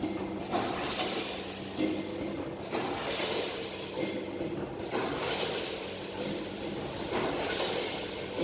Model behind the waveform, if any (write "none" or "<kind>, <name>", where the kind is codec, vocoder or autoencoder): none